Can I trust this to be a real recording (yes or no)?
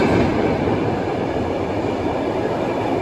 yes